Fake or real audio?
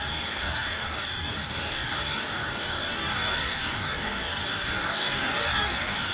fake